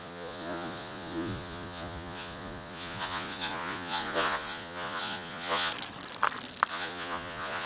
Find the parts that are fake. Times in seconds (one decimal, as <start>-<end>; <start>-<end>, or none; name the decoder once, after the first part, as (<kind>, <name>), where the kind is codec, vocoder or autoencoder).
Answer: 0.0-5.7 (vocoder, Vocos); 6.7-7.7